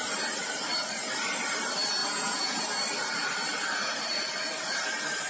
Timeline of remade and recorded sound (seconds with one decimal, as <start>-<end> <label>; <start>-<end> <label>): 0.0-2.0 recorded; 2.0-2.6 remade; 2.6-5.3 recorded